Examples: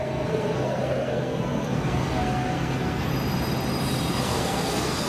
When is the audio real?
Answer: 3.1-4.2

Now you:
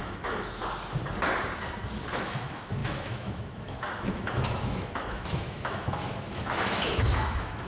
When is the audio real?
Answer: 0.6-2.1

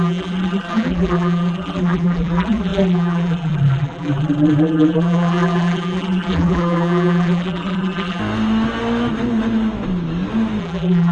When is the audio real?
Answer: 8.2-10.6

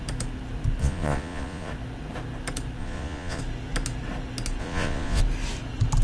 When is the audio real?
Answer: 0.0-0.8; 1.7-2.8; 3.4-4.6; 5.2-6.0

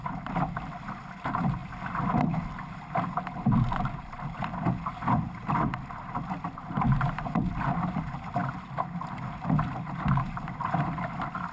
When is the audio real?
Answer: 0.0-11.5

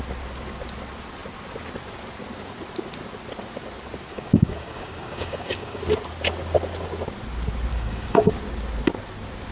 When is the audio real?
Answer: 0.0-4.1; 5.8-7.7; 8.3-9.5

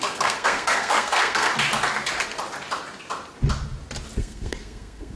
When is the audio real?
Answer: 1.5-4.2

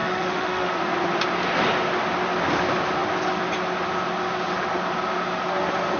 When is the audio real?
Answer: 0.7-6.0